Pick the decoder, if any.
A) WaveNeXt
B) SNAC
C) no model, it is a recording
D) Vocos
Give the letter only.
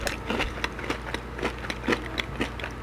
C